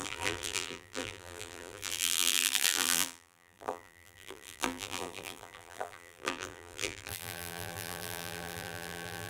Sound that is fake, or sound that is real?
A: fake